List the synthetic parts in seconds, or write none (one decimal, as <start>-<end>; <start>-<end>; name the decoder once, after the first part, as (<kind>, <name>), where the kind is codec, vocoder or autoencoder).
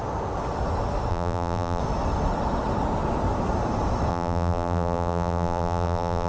1.1-1.8 (vocoder, BigVGAN v2); 4.1-6.3